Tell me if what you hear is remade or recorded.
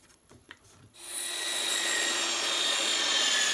remade